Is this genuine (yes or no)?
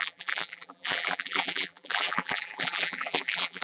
no